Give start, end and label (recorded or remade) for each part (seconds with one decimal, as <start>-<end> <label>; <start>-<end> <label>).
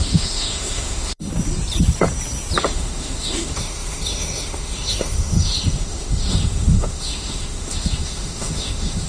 0.0-1.3 remade; 1.3-2.6 recorded; 2.6-9.1 remade